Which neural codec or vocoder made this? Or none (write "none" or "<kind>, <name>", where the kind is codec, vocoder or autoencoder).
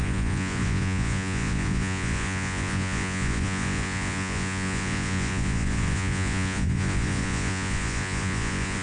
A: vocoder, Vocos